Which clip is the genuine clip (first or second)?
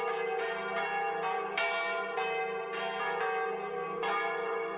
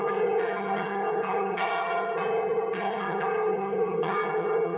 first